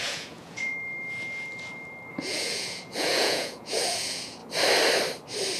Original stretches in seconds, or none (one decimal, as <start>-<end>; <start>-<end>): 0.7-2.1; 4.4-5.6